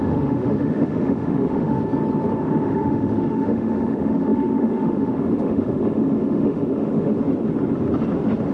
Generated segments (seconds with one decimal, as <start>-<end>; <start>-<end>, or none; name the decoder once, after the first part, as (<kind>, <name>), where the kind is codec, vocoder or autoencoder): 0.0-1.8 (autoencoder, DAC-VAE); 2.4-7.2

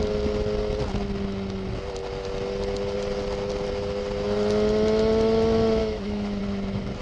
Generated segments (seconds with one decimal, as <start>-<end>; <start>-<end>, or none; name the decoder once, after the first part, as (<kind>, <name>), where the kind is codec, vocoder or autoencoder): 5.8-6.4 (autoencoder, DAC-VAE)

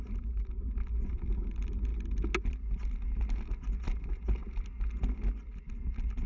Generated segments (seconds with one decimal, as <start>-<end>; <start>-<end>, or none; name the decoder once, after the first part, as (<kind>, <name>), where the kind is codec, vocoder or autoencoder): none

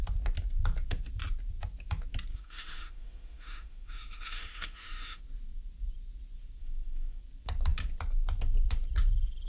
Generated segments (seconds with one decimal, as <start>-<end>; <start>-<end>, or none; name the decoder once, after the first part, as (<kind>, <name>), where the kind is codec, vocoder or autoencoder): 2.3-5.2 (autoencoder, DAC-VAE); 6.6-7.2

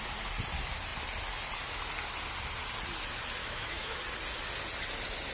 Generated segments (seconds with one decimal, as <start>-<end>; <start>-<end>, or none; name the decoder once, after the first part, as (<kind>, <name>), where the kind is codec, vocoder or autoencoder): 3.4-4.0 (autoencoder, DAC-VAE)

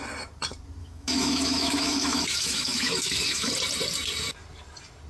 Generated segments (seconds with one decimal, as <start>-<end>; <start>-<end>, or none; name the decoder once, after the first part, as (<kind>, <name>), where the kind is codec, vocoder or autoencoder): 0.8-3.5 (autoencoder, DAC-VAE)